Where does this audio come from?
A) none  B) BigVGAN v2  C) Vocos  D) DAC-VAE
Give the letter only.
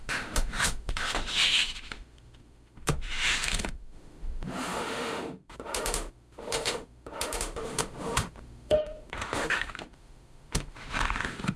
D